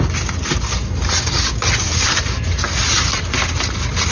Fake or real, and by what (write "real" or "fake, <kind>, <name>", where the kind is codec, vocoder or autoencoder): real